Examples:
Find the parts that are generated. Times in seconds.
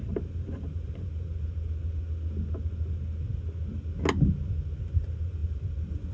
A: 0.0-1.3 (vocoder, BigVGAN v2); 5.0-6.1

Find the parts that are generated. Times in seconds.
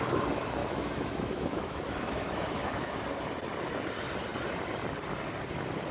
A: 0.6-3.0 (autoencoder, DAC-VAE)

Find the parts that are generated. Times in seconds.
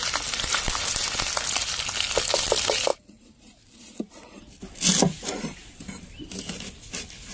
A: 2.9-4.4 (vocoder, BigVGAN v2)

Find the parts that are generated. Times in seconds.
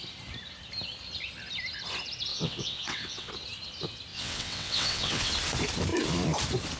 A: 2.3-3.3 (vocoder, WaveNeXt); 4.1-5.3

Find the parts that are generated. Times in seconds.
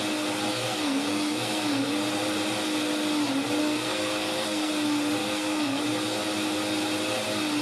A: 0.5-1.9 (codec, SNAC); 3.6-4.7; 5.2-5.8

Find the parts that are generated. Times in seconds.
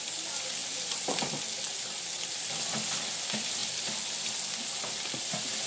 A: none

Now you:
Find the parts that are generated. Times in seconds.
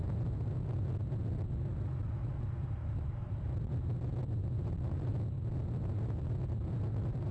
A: 0.0-1.7 (vocoder, BigVGAN v2); 2.6-5.1; 6.0-7.3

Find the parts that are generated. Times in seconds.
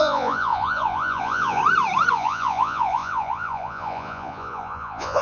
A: 0.0-1.6 (vocoder, Vocos); 2.1-5.2